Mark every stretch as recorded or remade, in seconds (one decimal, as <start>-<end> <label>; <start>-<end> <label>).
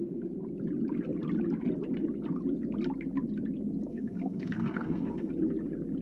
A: 0.0-3.9 recorded; 3.9-5.3 remade; 5.3-6.0 recorded